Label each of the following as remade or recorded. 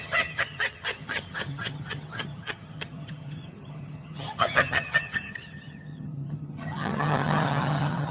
remade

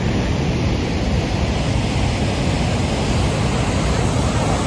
recorded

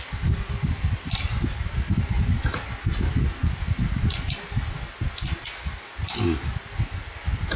recorded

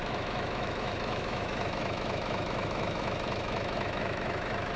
remade